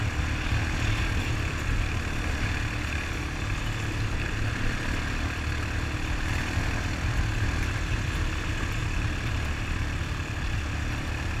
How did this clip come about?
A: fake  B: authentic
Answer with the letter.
B